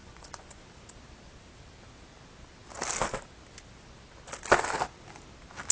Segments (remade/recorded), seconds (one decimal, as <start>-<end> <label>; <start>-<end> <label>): 0.0-0.6 remade; 0.6-5.7 recorded